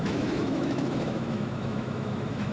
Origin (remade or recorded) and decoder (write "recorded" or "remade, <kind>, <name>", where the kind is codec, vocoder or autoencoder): remade, autoencoder, DAC-VAE